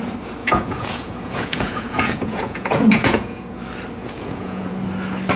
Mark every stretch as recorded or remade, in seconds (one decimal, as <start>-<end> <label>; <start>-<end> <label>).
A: 0.0-0.4 recorded; 0.4-3.6 remade; 3.6-4.0 recorded; 4.0-4.7 remade; 4.7-5.4 recorded